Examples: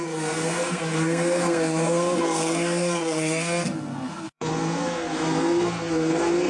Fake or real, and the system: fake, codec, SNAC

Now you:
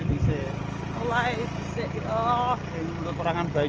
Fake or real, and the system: real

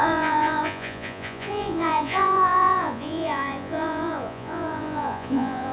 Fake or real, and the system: fake, vocoder, Vocos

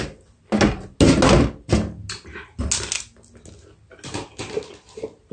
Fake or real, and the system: real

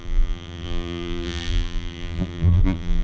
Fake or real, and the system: fake, vocoder, BigVGAN v2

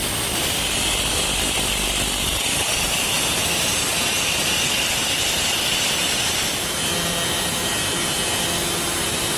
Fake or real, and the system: real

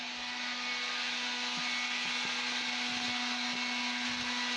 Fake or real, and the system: real